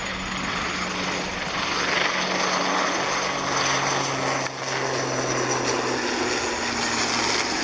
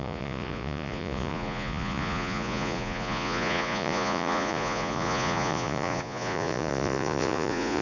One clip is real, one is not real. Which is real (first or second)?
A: first